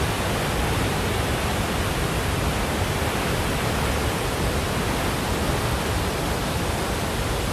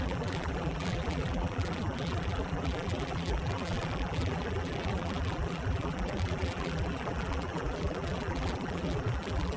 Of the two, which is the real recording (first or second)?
first